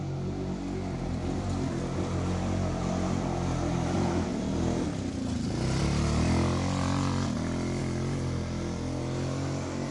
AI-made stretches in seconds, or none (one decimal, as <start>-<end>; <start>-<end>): none